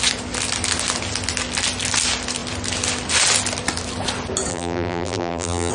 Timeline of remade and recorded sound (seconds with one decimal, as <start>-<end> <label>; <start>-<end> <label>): 0.0-4.5 recorded; 4.5-5.7 remade